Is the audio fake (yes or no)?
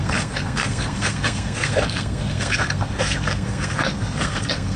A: yes